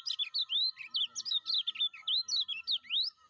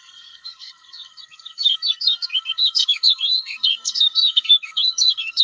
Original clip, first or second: first